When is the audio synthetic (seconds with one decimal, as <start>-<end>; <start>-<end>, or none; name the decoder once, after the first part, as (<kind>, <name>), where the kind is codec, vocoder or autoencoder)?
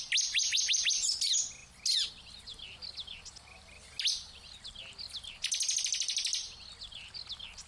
none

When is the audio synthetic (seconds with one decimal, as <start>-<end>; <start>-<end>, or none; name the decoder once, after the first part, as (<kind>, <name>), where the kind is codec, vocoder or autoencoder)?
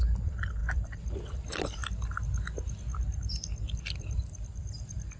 0.0-1.8 (vocoder, BigVGAN v2); 3.7-5.2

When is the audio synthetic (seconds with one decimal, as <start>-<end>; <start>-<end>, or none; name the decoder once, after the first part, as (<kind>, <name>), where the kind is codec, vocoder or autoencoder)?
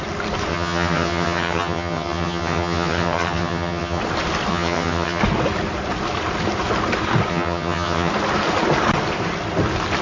0.5-4.0 (vocoder, HiFi-GAN); 4.5-5.2; 7.3-8.1